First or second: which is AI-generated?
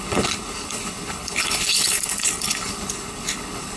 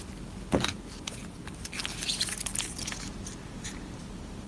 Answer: first